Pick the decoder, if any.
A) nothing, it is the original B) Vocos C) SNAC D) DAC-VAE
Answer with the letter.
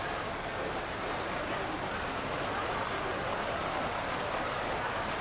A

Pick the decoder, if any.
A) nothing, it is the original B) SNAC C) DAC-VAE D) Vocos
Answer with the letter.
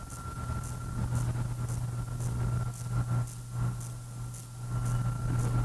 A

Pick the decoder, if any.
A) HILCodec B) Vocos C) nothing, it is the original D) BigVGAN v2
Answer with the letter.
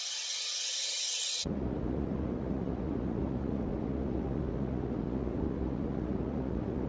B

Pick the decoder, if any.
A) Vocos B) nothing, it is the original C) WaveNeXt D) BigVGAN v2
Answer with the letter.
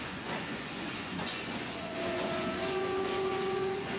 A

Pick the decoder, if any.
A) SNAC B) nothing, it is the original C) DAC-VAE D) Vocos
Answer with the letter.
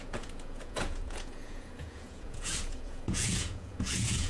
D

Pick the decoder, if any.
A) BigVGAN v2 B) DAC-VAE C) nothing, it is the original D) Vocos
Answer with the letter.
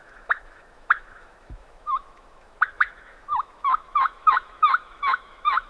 B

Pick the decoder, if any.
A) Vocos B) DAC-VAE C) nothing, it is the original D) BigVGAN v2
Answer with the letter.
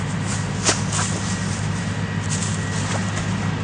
C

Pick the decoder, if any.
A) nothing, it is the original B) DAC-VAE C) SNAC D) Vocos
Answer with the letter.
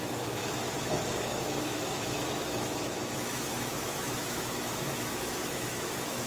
B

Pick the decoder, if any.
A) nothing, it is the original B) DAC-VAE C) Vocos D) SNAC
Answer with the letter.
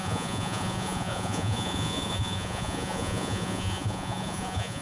C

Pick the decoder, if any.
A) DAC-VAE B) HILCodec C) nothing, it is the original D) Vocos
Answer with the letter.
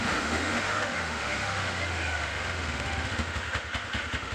A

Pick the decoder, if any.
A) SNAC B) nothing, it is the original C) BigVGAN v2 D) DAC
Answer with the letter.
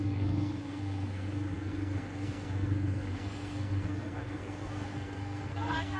A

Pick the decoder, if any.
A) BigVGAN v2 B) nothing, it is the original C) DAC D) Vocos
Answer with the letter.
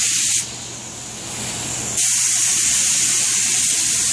B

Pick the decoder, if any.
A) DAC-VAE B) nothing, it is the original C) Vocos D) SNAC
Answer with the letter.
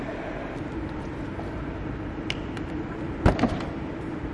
B